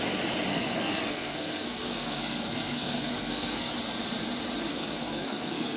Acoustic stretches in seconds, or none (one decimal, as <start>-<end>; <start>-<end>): 0.0-0.5; 3.7-4.7